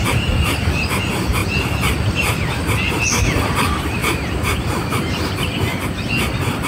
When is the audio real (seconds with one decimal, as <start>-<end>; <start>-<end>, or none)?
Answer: 0.0-1.4; 3.0-4.0; 5.1-6.7